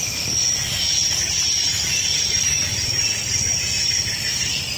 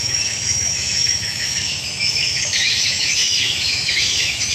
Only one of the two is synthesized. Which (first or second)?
second